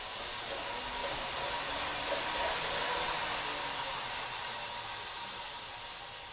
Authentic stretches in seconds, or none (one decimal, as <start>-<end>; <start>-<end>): 0.0-6.3